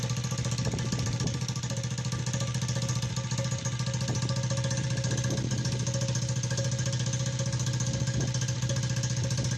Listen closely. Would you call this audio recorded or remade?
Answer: recorded